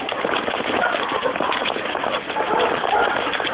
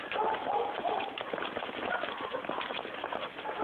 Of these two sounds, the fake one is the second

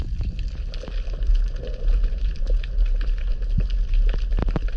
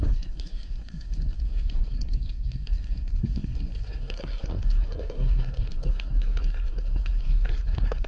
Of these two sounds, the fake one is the second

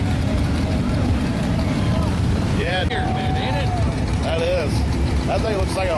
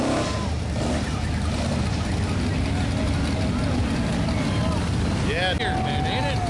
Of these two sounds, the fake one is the first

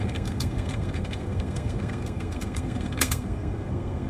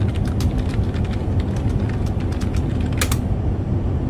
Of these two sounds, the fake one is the first